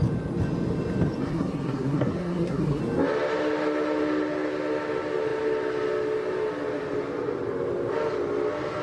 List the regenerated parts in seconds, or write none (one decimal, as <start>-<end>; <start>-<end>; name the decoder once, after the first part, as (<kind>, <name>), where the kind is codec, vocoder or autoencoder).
1.2-2.8 (codec, SNAC)